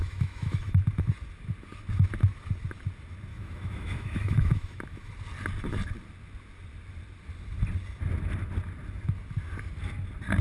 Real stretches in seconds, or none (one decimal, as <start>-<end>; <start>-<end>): 0.8-3.3; 5.1-10.4

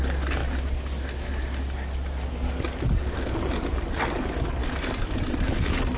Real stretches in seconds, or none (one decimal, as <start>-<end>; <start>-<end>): 0.0-6.0

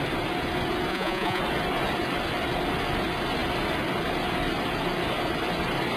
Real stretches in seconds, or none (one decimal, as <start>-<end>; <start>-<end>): 0.0-0.9; 1.4-6.0